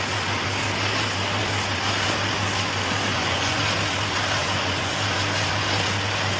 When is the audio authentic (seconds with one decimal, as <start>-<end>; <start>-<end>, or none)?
0.0-3.1; 3.6-4.4; 4.9-6.4